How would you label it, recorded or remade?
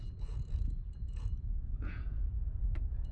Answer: remade